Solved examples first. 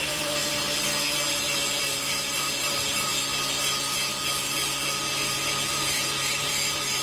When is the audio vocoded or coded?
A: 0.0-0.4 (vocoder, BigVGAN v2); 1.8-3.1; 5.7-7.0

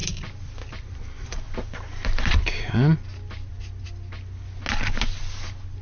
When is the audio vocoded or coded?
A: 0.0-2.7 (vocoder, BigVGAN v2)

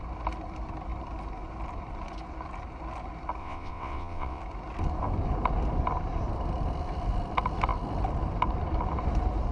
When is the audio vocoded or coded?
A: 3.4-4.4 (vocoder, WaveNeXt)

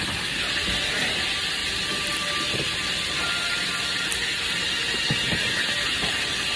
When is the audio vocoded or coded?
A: none